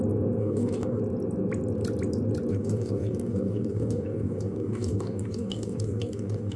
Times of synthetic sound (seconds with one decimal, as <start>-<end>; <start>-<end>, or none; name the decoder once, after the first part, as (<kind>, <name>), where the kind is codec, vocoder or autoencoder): 0.4-1.0 (codec, DAC); 2.5-6.6